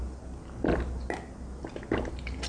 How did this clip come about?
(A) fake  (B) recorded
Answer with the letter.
B